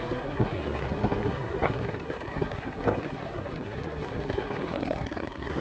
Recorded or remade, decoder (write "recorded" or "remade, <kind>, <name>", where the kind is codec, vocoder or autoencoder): remade, codec, SNAC